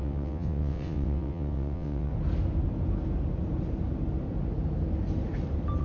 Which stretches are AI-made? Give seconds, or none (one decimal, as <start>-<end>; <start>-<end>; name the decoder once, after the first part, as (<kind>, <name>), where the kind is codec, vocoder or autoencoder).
0.0-2.1 (vocoder, WaveNeXt)